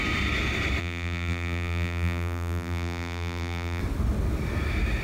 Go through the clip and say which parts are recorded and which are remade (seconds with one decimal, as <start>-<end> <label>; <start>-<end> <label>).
0.0-0.8 recorded; 0.8-3.8 remade; 3.8-5.0 recorded

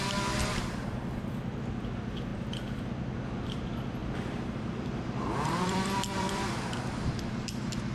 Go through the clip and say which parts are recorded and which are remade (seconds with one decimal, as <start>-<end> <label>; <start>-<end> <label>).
0.0-4.0 recorded; 4.0-6.6 remade; 6.6-7.9 recorded

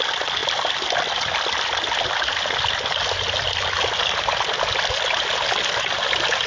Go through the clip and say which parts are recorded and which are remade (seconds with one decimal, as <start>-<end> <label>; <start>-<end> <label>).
0.0-0.4 recorded; 0.4-3.6 remade; 3.6-6.5 recorded

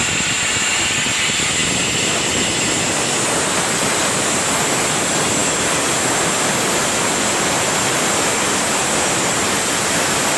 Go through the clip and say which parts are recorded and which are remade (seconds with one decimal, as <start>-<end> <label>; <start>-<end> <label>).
0.0-10.4 recorded

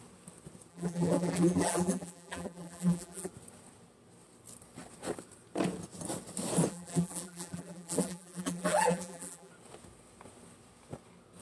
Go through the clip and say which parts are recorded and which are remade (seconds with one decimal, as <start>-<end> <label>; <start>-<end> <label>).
0.0-0.7 recorded; 0.7-3.3 remade; 3.3-6.7 recorded; 6.7-9.5 remade; 9.5-11.4 recorded